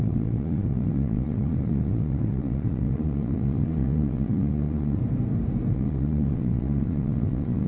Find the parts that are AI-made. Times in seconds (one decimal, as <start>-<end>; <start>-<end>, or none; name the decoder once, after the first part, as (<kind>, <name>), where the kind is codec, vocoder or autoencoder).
0.0-5.0 (vocoder, Vocos); 5.7-7.7